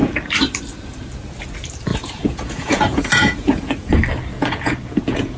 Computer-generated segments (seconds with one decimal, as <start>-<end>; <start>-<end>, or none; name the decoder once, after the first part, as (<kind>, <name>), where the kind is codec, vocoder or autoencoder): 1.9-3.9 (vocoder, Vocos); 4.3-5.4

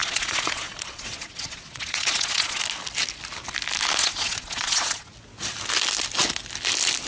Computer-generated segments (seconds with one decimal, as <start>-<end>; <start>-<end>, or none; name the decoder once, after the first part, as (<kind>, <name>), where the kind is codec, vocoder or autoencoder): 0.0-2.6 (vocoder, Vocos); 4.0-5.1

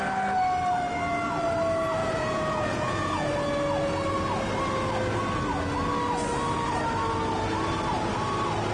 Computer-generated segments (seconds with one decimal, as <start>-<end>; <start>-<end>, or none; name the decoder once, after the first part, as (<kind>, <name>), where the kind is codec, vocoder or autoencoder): 2.0-3.3 (vocoder, Vocos)